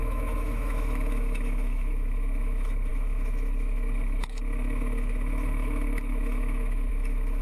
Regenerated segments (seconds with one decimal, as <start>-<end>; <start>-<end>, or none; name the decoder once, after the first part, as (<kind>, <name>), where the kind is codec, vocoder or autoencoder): 0.0-7.4 (autoencoder, DAC-VAE)